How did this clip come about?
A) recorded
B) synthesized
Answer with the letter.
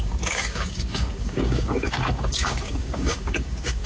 B